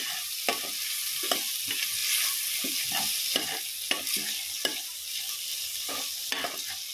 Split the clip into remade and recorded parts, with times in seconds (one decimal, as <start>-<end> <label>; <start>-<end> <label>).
0.0-6.9 recorded